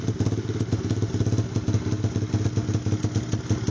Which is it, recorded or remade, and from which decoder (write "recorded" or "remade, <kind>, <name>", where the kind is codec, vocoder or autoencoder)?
recorded